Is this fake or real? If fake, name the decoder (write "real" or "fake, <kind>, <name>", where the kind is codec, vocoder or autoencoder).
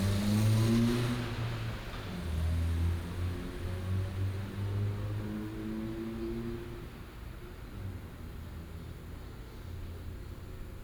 real